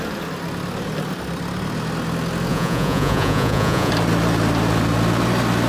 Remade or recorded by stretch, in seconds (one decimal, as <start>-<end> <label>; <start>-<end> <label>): 0.0-2.5 recorded; 2.5-3.9 remade; 3.9-5.7 recorded

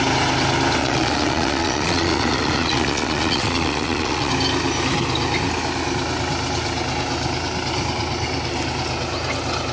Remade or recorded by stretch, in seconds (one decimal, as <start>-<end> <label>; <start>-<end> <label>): 0.0-0.8 recorded; 0.8-4.3 remade; 4.3-9.7 recorded

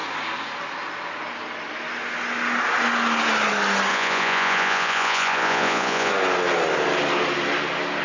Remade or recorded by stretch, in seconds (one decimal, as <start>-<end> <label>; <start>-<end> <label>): 0.0-3.9 recorded; 3.9-6.1 remade; 6.1-8.0 recorded

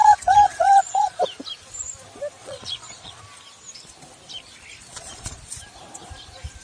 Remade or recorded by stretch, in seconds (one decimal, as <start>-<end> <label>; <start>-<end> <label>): 0.0-1.2 remade; 1.2-2.4 recorded; 2.4-3.2 remade; 3.2-4.9 recorded; 4.9-5.4 remade; 5.4-6.6 recorded